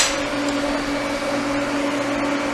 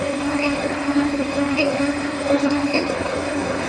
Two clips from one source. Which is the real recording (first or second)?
first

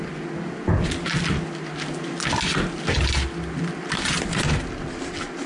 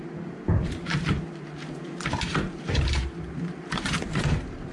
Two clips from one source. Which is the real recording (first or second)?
first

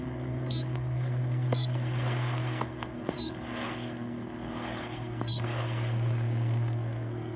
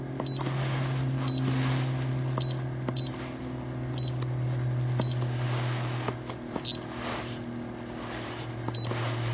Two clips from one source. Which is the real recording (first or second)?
second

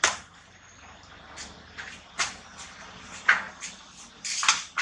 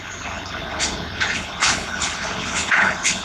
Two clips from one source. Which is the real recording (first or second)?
first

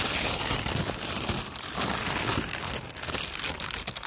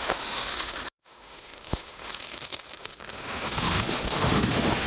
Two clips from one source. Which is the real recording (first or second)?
first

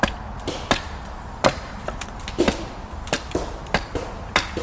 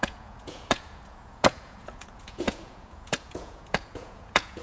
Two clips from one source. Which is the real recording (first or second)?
first